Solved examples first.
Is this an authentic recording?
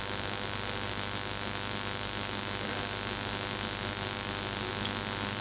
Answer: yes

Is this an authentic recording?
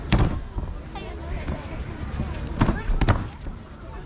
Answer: yes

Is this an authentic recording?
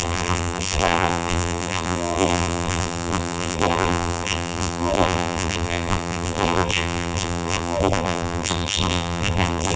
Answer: no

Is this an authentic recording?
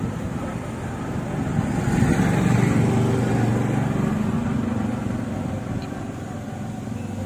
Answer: yes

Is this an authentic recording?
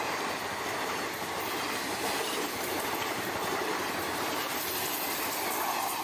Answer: no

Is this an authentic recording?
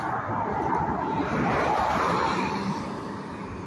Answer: no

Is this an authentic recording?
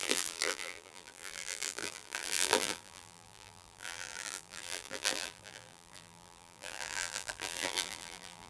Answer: no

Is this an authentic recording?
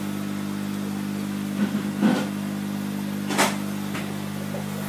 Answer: yes